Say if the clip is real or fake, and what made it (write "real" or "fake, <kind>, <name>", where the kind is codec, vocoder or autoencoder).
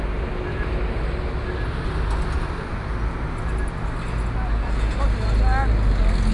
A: real